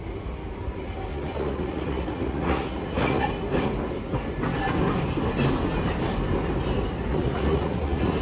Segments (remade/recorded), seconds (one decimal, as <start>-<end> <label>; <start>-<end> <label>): 0.0-1.1 recorded; 1.1-3.3 remade; 3.3-7.1 recorded; 7.1-8.2 remade